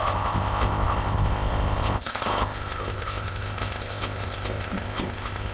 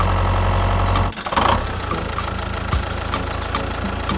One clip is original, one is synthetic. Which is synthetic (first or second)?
first